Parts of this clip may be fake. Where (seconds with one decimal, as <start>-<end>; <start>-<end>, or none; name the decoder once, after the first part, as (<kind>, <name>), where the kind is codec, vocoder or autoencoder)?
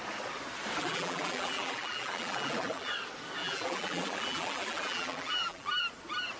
0.8-2.9 (vocoder, BigVGAN v2); 3.4-5.8